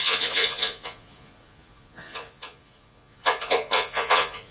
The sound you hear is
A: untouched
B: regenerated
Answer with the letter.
B